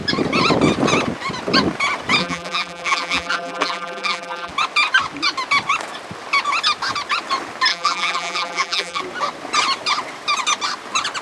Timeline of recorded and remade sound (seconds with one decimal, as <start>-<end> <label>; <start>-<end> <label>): 0.0-2.2 recorded; 2.2-4.5 remade; 4.5-7.7 recorded; 7.7-9.0 remade; 9.0-11.2 recorded